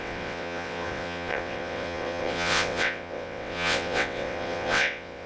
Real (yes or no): no